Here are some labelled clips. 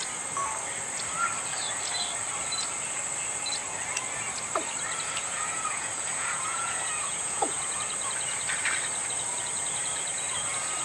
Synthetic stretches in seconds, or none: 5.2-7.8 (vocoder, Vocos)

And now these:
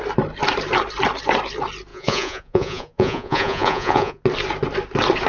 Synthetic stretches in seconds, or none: 1.9-4.2 (vocoder, Vocos)

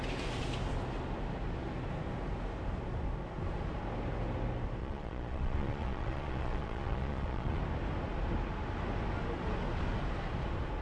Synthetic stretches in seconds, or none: 4.8-7.6 (vocoder, Vocos)

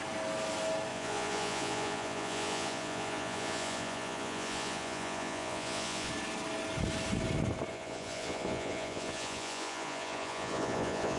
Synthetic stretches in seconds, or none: 0.9-6.1 (vocoder, Vocos); 7.7-11.2

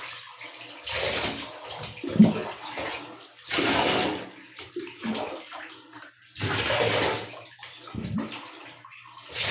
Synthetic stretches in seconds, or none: none

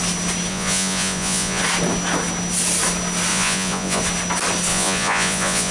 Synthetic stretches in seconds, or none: 0.5-1.6 (vocoder, Vocos); 3.3-4.0; 4.7-5.7